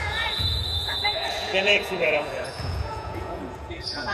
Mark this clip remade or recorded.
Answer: remade